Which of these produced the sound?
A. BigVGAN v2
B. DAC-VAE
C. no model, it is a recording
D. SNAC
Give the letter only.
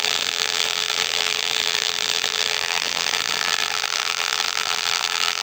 A